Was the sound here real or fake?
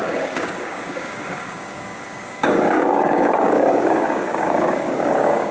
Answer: fake